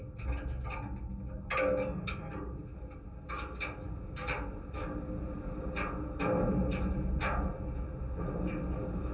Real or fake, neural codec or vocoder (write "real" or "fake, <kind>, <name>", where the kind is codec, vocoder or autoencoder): real